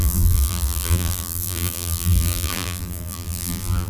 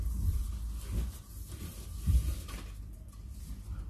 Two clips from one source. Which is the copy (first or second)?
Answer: first